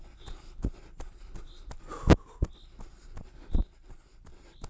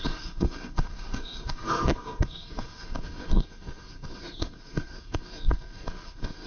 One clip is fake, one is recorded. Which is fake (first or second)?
second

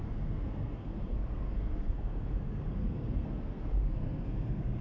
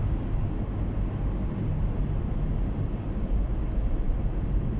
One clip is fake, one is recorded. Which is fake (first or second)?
first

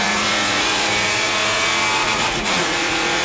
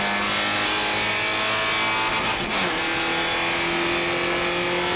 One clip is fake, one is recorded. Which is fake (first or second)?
first